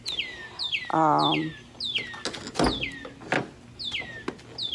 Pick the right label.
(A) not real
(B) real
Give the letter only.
B